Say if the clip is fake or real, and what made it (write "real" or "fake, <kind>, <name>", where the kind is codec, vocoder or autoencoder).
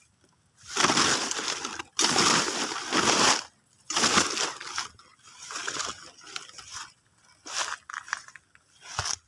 real